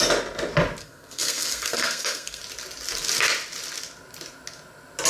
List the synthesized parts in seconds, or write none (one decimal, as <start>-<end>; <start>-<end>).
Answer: 0.8-2.4